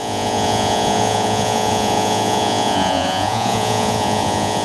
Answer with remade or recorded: remade